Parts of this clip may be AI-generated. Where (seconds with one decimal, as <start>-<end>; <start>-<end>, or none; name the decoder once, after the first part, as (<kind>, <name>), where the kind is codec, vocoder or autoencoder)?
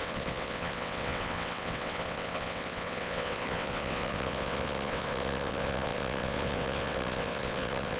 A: 0.0-8.0 (vocoder, WaveNeXt)